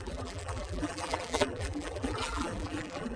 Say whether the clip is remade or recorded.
remade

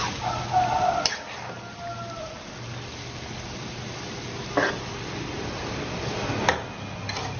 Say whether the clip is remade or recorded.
recorded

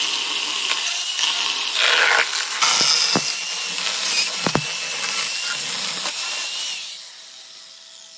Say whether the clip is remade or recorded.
recorded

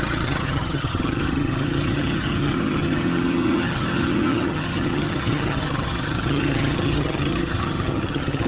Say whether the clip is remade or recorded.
remade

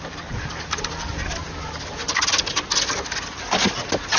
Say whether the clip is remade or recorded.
recorded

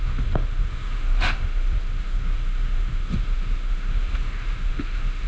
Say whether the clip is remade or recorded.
remade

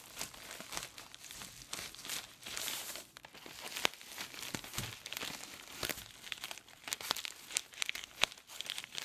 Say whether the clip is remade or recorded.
recorded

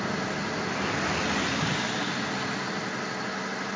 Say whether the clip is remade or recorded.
recorded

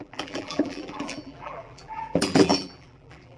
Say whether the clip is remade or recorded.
remade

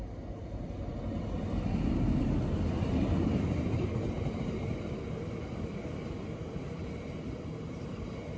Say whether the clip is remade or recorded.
recorded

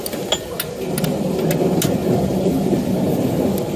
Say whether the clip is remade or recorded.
recorded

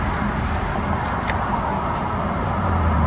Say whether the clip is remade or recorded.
recorded